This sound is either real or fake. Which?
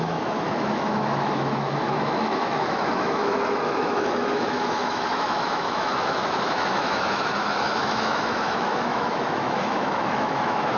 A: fake